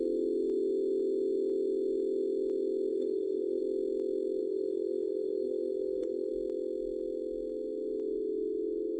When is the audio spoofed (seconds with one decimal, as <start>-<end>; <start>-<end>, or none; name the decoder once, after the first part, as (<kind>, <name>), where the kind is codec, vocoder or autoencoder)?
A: 2.9-3.6 (autoencoder, DAC-VAE); 4.4-6.3